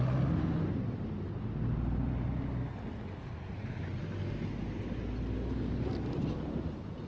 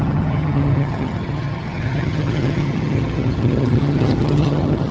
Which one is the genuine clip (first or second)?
first